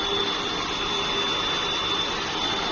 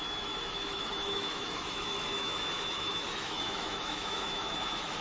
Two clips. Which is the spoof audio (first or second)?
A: second